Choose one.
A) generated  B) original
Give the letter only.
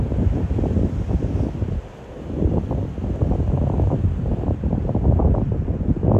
B